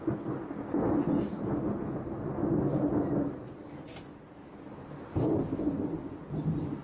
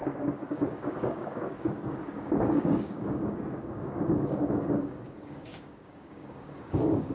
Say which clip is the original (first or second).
first